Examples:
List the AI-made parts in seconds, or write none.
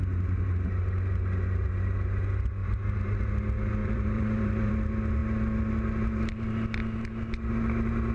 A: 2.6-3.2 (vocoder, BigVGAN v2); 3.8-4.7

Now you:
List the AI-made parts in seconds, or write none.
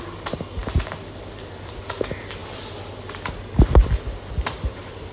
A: none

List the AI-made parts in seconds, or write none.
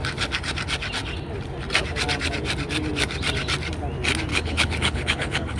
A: 4.3-5.6 (codec, HILCodec)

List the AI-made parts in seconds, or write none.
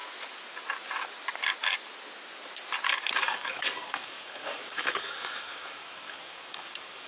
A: 3.2-7.1 (codec, DAC)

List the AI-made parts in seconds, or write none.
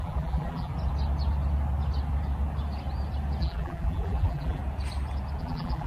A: 0.0-0.7 (vocoder, BigVGAN v2); 3.4-4.6; 5.4-5.9